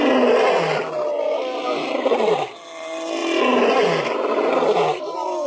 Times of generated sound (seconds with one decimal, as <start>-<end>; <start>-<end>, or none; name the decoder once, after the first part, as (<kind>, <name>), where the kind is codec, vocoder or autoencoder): none